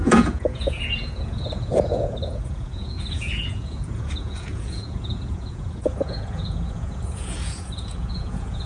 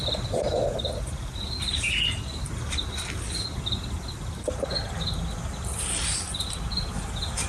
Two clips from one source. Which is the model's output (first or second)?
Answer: first